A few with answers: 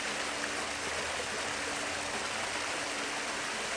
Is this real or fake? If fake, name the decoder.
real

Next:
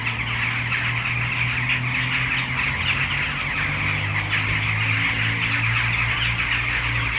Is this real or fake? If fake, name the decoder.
real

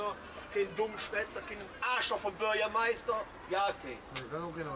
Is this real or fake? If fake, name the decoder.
real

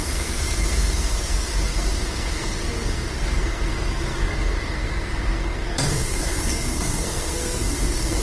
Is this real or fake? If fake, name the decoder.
fake, codec, SNAC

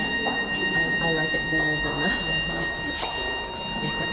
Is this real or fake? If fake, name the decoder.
real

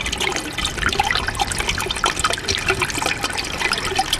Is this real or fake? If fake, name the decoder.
real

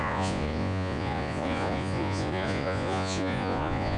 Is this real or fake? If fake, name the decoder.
fake, vocoder, Vocos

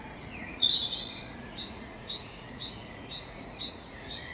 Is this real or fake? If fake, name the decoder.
fake, vocoder, Vocos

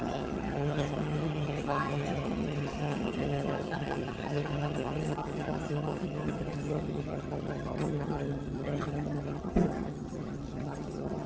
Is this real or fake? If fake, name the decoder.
fake, vocoder, HiFi-GAN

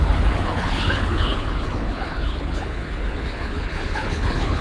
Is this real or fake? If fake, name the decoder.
fake, codec, HILCodec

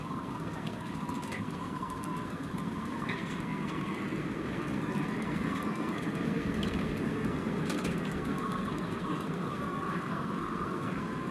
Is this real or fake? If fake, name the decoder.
fake, codec, SNAC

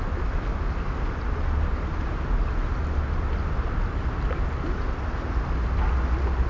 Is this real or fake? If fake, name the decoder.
real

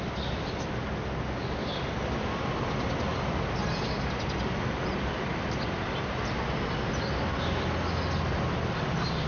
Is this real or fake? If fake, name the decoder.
real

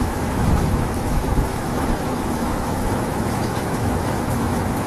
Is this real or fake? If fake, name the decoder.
fake, autoencoder, DAC-VAE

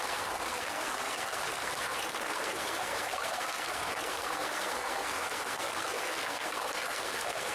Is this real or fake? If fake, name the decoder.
fake, codec, SNAC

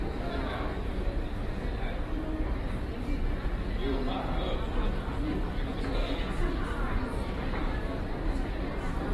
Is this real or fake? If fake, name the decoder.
real